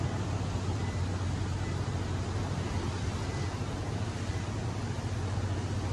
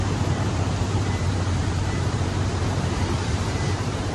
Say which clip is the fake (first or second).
second